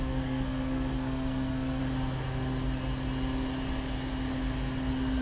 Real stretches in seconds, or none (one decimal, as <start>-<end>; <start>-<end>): 1.8-5.2